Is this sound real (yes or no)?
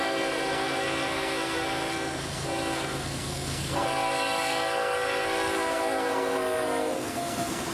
no